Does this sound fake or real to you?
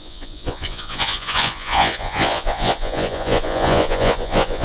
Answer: fake